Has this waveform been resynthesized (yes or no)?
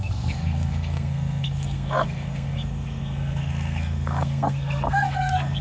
yes